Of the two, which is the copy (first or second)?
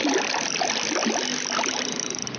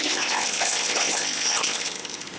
second